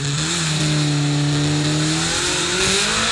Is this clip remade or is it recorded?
recorded